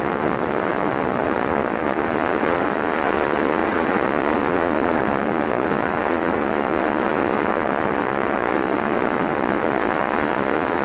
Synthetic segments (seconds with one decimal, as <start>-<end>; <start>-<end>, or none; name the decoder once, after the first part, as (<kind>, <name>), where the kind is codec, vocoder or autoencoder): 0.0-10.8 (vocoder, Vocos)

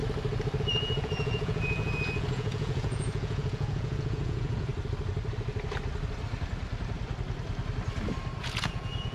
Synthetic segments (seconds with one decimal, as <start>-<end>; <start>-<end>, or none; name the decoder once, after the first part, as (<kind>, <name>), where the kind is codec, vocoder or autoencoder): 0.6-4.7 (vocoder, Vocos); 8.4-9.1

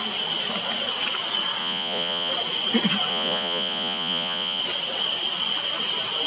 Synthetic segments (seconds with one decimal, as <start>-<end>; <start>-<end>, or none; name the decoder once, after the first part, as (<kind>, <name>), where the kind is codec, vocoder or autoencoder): 1.6-2.3 (vocoder, Vocos); 3.1-4.6

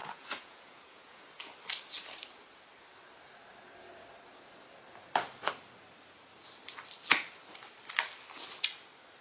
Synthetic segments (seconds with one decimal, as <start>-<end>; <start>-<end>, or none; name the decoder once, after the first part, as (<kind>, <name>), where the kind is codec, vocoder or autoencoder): 0.0-1.4 (vocoder, Vocos)

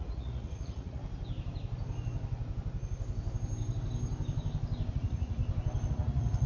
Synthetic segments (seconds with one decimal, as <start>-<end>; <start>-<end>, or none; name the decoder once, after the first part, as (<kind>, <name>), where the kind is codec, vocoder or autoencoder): 0.0-1.0 (vocoder, Vocos); 4.9-5.4; 5.9-6.5